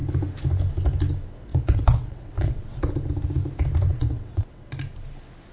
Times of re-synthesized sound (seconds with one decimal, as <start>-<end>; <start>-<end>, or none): 1.5-2.8; 3.9-4.7

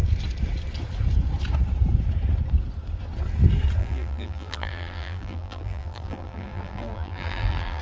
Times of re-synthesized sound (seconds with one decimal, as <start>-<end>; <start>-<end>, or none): 3.8-7.8

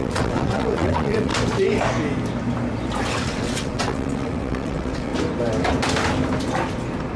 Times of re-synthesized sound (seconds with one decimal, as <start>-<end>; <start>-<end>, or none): 0.0-1.3; 3.1-5.1

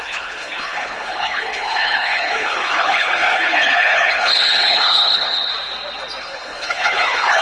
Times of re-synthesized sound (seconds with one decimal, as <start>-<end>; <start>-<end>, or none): 0.0-5.5; 6.2-7.4

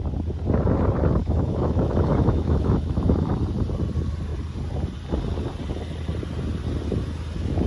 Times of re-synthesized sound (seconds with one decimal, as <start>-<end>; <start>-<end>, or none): 1.2-3.3

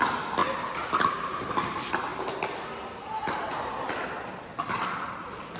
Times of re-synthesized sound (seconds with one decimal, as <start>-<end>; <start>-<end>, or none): none